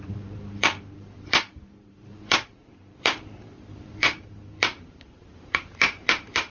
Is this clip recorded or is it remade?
remade